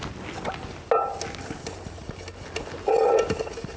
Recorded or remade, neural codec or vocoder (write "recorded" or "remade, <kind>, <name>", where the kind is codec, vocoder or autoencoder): recorded